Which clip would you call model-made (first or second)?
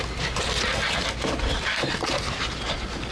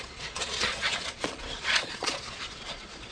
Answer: second